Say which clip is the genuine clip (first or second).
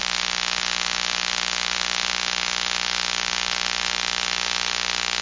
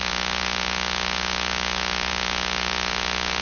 first